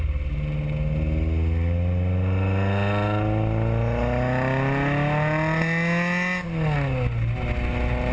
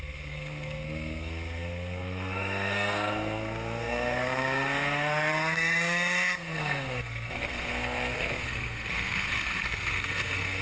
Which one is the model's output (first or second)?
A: second